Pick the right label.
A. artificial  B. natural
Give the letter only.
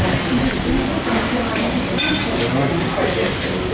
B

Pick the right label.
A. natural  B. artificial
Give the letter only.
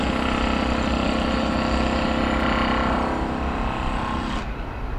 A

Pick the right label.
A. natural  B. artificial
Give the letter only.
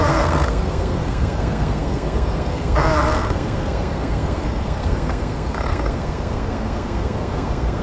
B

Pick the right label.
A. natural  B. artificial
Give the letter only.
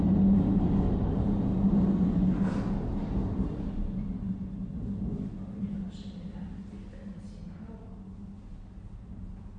A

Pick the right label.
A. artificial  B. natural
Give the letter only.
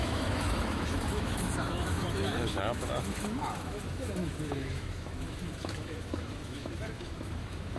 A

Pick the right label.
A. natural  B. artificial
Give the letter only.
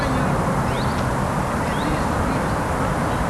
A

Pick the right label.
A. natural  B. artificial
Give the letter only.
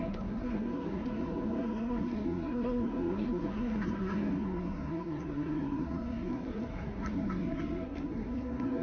B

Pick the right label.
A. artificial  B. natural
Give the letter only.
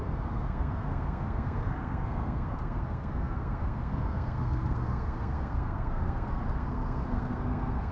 A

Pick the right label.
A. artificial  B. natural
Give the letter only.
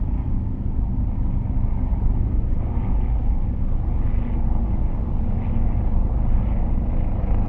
B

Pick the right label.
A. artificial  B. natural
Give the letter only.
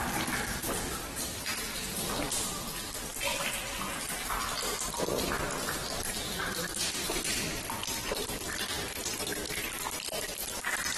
B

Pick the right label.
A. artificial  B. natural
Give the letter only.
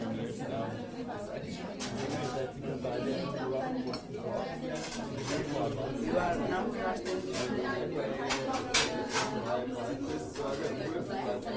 B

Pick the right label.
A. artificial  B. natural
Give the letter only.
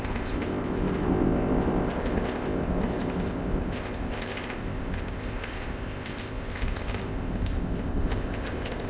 A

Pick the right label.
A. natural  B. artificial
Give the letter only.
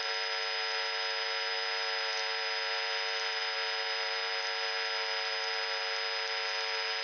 A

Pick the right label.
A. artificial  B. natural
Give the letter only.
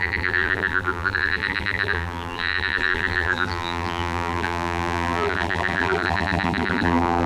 A